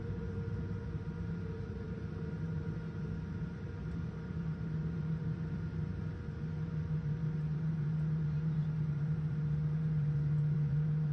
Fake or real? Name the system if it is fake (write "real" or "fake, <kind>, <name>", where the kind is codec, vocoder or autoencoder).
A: fake, vocoder, BigVGAN v2